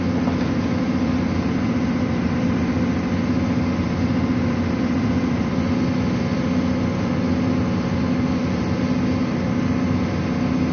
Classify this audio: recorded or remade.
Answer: recorded